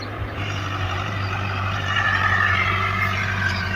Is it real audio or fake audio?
fake